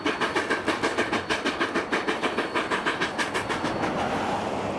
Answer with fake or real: real